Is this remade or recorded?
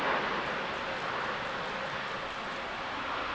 remade